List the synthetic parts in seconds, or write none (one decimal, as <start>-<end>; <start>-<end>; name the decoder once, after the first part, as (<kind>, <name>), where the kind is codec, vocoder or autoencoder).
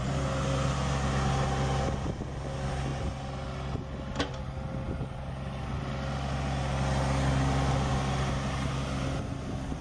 none